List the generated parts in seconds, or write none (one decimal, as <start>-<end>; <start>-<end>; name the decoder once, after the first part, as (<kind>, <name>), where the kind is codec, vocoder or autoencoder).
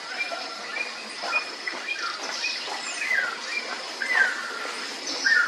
0.7-4.0 (vocoder, BigVGAN v2)